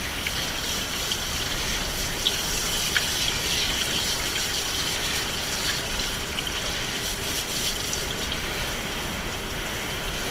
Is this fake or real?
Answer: real